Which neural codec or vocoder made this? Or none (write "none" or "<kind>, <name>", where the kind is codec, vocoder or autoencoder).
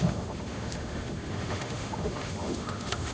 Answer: autoencoder, DAC-VAE